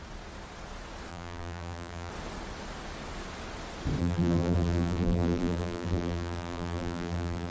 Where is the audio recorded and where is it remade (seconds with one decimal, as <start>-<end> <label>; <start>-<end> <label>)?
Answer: 0.0-1.1 recorded; 1.1-2.1 remade; 2.1-4.0 recorded; 4.0-7.5 remade